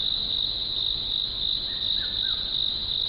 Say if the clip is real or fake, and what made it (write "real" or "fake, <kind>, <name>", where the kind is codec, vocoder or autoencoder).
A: real